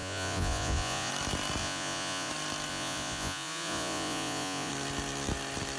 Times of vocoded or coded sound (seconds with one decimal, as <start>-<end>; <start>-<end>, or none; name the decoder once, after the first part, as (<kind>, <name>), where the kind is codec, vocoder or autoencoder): 0.0-1.1 (vocoder, Vocos); 1.6-2.3; 2.7-4.7